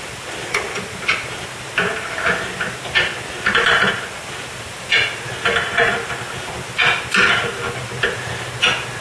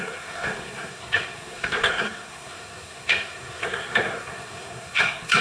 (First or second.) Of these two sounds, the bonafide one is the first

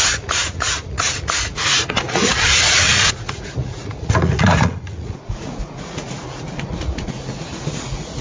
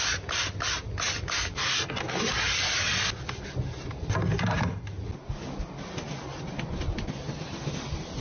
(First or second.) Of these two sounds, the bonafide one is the second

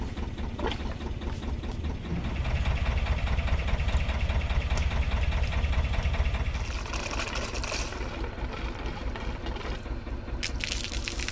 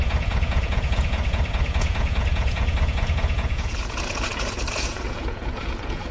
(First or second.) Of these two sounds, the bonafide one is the first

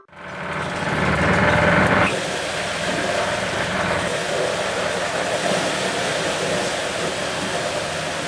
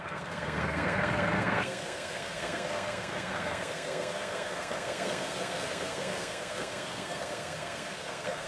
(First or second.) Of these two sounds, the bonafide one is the first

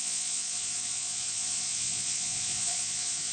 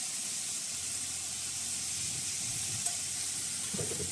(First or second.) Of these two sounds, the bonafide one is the second